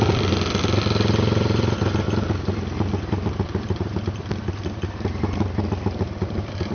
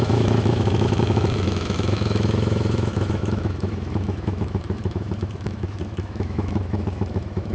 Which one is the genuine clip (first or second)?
first